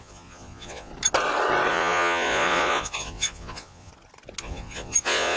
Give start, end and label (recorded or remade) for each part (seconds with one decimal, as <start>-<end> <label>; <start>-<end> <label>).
0.0-0.9 remade; 0.9-1.7 recorded; 1.7-3.9 remade; 3.9-4.4 recorded; 4.4-5.4 remade